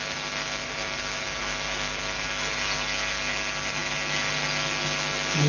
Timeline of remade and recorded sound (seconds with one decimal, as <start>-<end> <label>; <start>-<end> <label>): 0.0-5.5 recorded